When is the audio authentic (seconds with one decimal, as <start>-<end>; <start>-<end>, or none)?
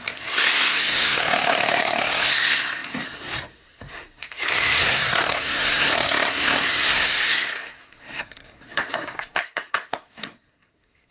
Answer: none